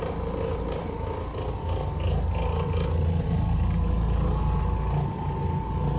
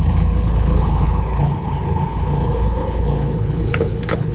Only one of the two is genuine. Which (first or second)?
first